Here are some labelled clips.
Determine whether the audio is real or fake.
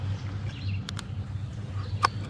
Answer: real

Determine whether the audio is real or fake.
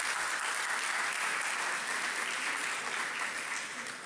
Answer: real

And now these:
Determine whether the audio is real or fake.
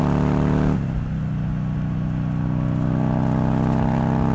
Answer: real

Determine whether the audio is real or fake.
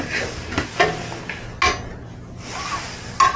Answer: real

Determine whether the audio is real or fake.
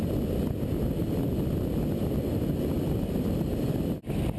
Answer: real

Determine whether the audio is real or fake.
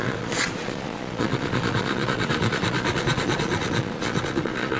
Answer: fake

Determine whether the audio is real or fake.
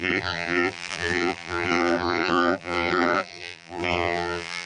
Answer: fake